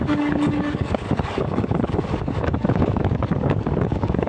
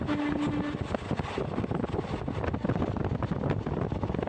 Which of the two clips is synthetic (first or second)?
first